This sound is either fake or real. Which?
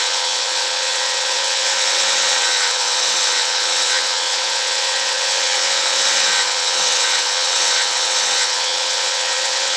fake